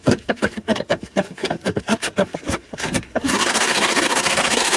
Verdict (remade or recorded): remade